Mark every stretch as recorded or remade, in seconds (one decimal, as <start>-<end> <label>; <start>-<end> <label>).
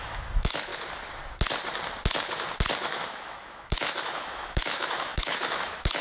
0.0-0.7 remade; 0.7-2.8 recorded; 2.8-6.0 remade